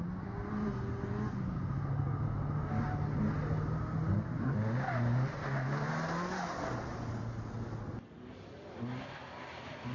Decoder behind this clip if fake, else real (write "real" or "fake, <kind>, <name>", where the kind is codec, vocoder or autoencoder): real